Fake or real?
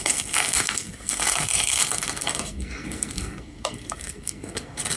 fake